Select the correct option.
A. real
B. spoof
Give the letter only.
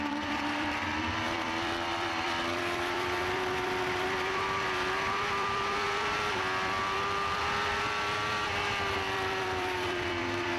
B